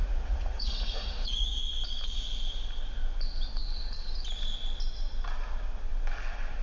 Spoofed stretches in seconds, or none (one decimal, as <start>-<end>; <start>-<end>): 0.0-1.6